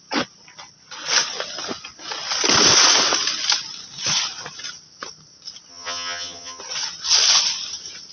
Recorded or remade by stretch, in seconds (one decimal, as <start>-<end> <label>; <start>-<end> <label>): 0.0-5.7 recorded; 5.7-6.6 remade; 6.6-8.1 recorded